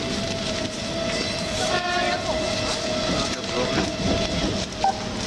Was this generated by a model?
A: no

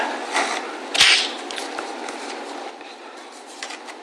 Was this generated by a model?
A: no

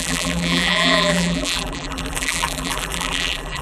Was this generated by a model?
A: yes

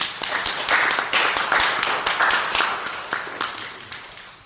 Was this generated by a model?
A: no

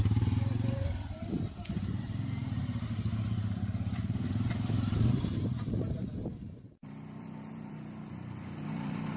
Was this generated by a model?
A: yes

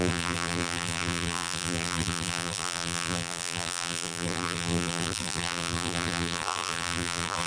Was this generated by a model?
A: yes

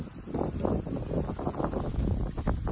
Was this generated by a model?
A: no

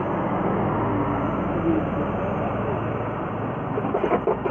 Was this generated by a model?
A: no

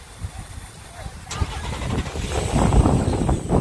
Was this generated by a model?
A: yes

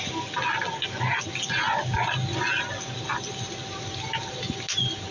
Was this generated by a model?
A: no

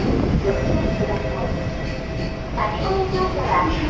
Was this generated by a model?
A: no